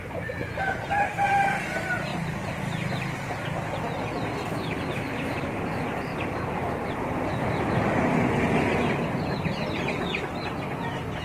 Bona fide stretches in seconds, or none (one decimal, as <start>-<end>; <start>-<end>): 0.0-11.2